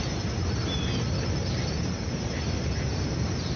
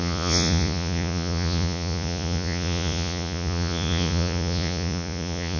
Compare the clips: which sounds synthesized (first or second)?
second